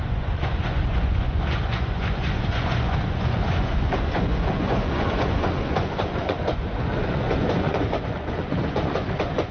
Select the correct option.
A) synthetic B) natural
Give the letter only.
A